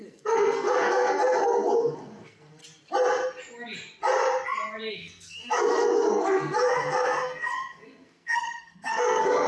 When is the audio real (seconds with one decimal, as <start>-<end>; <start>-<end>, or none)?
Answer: 2.6-4.9